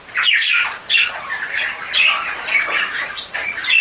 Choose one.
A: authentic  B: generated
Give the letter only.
A